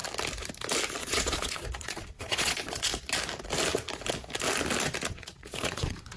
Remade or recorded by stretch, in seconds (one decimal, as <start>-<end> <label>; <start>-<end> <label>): 0.0-1.0 recorded; 1.0-2.9 remade; 2.9-5.1 recorded; 5.1-6.2 remade